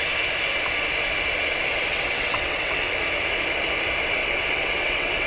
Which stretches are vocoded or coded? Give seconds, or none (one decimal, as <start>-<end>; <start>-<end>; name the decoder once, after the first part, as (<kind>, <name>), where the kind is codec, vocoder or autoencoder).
1.9-2.9 (vocoder, WaveNeXt); 4.2-5.3